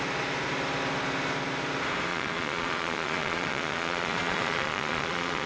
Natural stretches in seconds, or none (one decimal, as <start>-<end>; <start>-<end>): 0.0-2.1